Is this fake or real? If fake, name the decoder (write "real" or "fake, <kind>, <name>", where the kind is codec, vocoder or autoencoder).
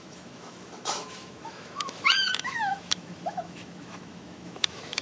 fake, autoencoder, DAC-VAE